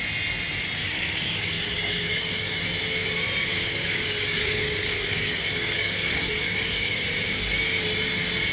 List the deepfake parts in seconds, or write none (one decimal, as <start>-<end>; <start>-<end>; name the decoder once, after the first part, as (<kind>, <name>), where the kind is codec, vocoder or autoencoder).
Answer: 0.8-2.6 (codec, DAC); 3.5-7.1